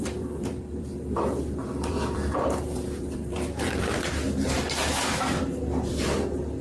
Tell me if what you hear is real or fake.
fake